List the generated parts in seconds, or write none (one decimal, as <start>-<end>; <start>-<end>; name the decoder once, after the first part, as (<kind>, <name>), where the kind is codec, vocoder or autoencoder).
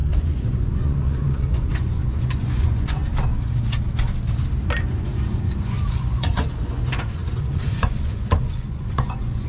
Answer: 0.0-3.0 (vocoder, Vocos); 4.8-9.5